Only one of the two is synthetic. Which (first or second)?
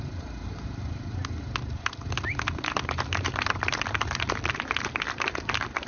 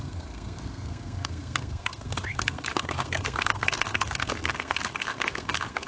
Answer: second